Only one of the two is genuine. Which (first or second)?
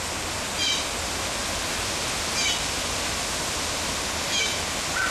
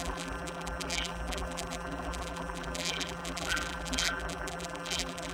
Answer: first